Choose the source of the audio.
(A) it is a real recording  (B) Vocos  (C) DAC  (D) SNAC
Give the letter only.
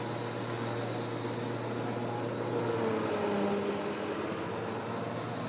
A